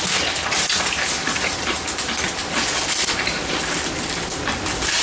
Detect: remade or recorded remade